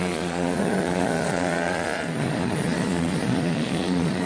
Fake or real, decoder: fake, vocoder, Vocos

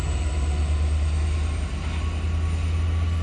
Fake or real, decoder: real